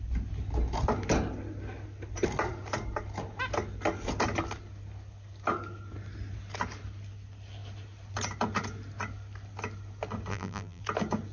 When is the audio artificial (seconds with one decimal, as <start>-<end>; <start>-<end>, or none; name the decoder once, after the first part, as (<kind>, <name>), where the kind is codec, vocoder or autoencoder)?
10.3-10.8 (vocoder, BigVGAN v2)